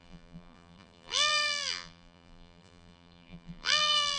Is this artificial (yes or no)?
yes